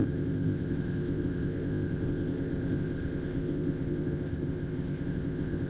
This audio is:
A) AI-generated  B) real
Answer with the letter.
A